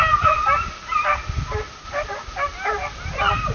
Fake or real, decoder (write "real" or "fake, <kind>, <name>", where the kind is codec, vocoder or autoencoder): real